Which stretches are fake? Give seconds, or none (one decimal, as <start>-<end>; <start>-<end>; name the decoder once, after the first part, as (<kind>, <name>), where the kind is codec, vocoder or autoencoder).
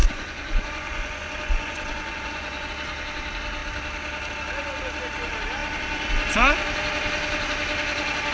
0.0-2.7 (vocoder, Vocos)